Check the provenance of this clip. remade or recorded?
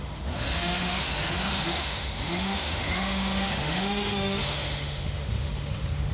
remade